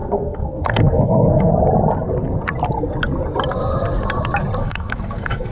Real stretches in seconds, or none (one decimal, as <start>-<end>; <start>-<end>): 1.5-4.6